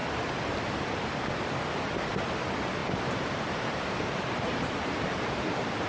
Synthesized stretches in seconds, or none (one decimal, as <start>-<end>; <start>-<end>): 2.8-5.5